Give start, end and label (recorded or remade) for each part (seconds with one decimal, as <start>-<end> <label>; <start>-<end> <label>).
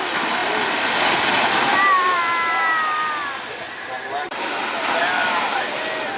0.0-6.2 recorded